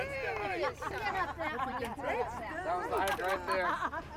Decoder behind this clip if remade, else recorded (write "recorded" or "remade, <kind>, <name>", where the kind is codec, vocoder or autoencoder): recorded